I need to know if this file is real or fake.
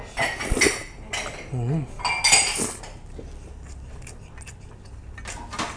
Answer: real